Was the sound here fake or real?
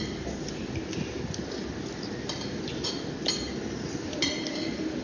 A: real